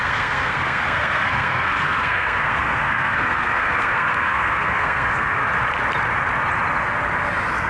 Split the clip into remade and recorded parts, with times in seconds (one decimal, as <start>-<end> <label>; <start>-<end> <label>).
0.0-5.4 remade; 5.4-7.7 recorded